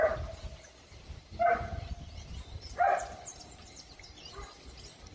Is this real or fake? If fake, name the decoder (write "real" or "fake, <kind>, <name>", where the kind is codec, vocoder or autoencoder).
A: real